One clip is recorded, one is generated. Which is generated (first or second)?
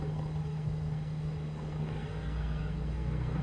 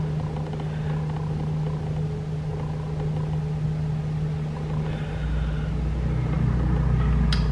first